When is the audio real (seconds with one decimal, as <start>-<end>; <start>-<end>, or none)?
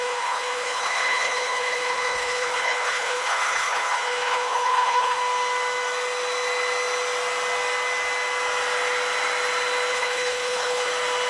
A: 5.2-9.9; 10.9-11.3